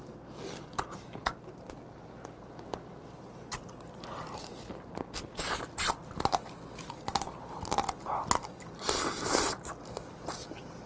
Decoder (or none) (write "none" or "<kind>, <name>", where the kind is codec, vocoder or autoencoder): none